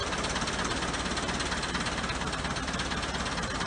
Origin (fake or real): real